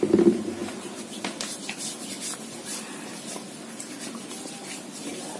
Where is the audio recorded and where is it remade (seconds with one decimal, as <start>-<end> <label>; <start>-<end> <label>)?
0.0-5.4 recorded